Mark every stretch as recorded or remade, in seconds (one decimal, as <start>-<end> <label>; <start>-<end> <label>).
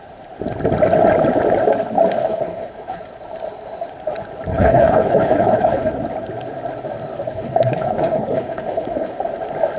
0.0-2.2 recorded; 2.2-3.0 remade; 3.0-4.5 recorded; 4.5-5.9 remade; 5.9-7.3 recorded; 7.3-9.2 remade; 9.2-9.8 recorded